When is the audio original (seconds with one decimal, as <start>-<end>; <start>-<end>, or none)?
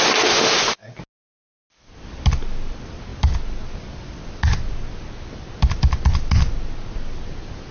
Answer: 0.0-7.7